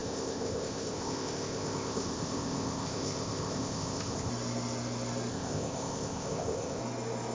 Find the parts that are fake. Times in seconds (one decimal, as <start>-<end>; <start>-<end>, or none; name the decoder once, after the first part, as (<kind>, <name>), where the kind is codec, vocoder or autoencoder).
0.0-4.3 (codec, ZipCodec); 5.3-6.8